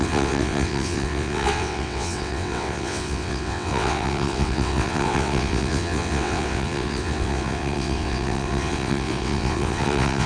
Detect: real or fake fake